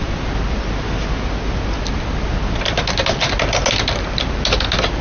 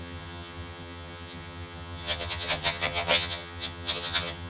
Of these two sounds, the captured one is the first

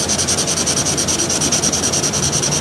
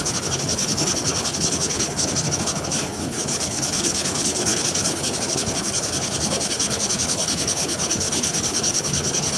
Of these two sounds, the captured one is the first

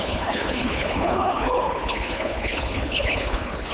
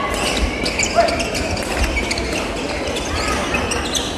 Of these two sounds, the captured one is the second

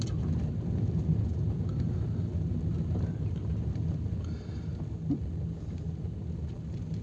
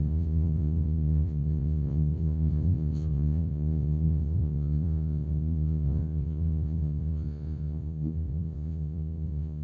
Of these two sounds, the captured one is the first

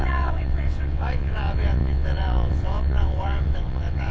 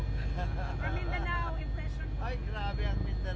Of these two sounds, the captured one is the second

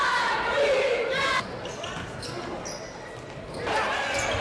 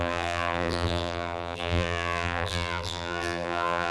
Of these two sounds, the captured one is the first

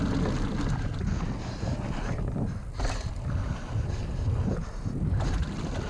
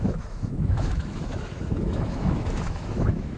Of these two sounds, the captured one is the first